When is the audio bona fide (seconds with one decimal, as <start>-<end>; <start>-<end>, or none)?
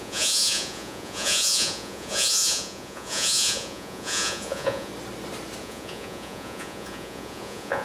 4.9-5.6